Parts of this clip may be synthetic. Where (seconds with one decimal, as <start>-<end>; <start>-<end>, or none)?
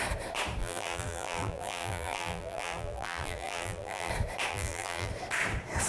0.6-4.1; 4.5-5.1